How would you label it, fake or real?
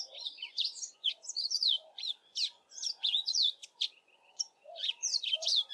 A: fake